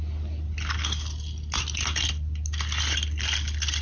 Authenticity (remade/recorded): recorded